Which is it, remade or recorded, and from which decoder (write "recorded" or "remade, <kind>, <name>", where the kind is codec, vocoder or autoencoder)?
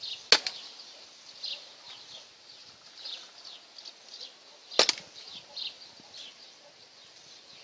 recorded